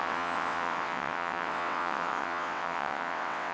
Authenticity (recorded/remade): remade